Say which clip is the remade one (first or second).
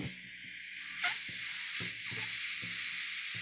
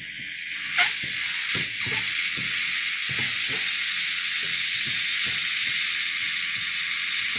second